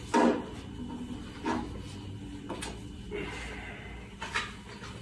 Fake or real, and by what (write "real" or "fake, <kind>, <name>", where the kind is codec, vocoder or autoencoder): real